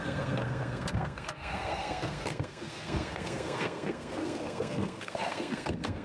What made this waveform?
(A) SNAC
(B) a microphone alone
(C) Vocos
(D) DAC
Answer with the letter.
A